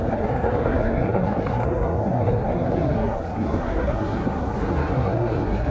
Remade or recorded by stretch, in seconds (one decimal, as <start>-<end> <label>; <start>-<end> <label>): 0.0-5.7 remade